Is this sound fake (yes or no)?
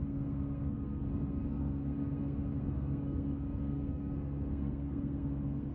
yes